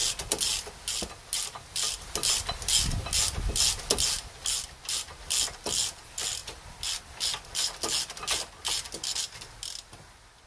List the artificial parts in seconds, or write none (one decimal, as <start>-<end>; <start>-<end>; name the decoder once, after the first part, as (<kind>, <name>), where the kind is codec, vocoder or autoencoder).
none

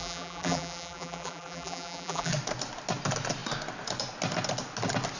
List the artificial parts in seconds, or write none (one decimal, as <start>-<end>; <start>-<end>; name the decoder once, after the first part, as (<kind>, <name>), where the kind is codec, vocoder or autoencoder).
0.0-2.3 (vocoder, BigVGAN v2)

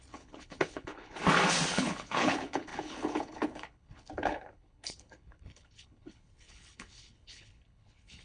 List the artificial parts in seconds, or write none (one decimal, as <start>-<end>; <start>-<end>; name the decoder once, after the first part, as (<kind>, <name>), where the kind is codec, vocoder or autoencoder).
0.0-1.2 (codec, HILCodec); 1.7-8.2